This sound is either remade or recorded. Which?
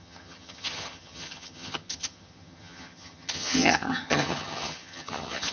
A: remade